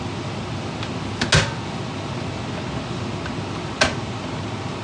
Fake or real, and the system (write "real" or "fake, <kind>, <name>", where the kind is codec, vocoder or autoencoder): real